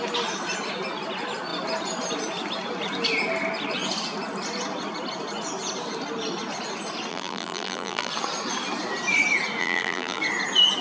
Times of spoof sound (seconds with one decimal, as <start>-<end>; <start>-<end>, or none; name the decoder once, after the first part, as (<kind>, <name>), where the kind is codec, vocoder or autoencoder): 7.1-8.1 (vocoder, BigVGAN v2); 9.6-10.2